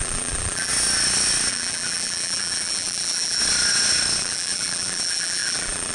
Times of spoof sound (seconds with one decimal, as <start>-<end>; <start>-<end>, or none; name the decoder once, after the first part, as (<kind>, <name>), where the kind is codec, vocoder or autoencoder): 0.0-0.7 (vocoder, BigVGAN v2); 1.5-3.4; 4.2-5.9